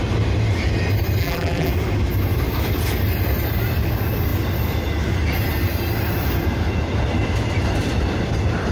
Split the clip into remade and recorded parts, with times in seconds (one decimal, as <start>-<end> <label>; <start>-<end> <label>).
0.0-1.2 recorded; 1.2-1.7 remade; 1.7-8.7 recorded